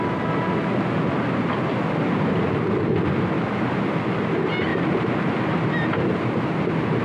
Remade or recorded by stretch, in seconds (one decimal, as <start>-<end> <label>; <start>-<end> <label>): 0.0-4.7 recorded; 4.7-7.0 remade